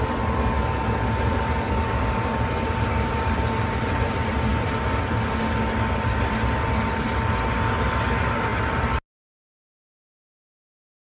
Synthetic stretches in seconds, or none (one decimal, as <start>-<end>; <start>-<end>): none